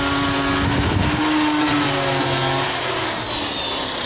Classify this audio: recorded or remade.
recorded